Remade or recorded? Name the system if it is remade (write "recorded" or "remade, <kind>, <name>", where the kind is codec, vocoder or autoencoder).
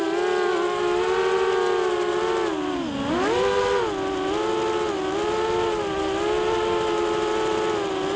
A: recorded